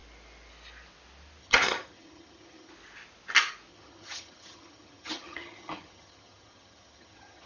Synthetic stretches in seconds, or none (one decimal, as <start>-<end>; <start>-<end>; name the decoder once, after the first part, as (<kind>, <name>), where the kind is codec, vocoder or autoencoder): 1.4-2.7 (vocoder, HiFi-GAN); 3.7-7.5